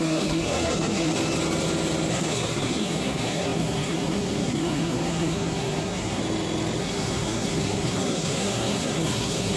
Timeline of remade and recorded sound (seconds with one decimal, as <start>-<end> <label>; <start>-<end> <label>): 0.0-1.1 remade; 1.1-2.1 recorded; 2.1-6.2 remade; 6.2-6.8 recorded; 6.8-9.6 remade